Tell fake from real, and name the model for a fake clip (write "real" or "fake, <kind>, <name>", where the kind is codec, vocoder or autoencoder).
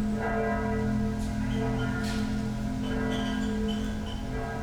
real